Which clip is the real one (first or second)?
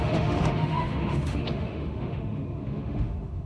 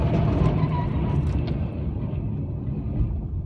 second